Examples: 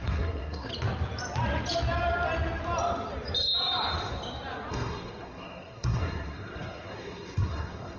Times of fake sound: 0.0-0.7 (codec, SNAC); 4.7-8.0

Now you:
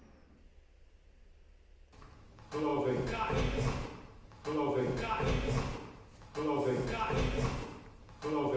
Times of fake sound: none

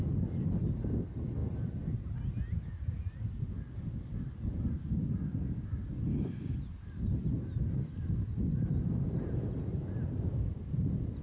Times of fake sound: none

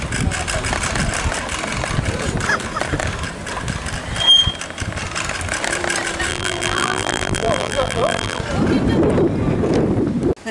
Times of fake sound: 6.3-8.4 (vocoder, BigVGAN v2)

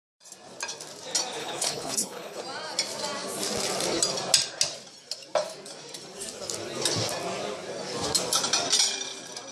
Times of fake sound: 1.4-2.4 (codec, HILCodec)

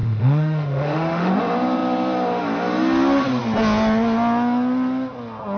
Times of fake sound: 0.0-1.3 (autoencoder, DAC-VAE)